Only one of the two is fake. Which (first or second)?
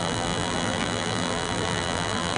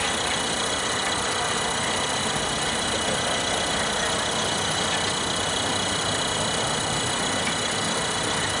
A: first